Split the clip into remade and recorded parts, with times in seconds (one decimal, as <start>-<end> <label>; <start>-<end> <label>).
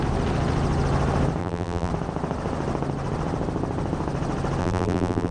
0.0-1.4 recorded; 1.4-1.9 remade; 1.9-4.6 recorded; 4.6-5.3 remade